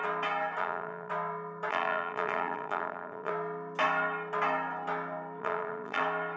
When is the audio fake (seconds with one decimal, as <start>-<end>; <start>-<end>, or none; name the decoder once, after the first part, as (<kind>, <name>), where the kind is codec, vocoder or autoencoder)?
0.6-1.1 (vocoder, BigVGAN v2); 1.7-3.3; 5.4-6.0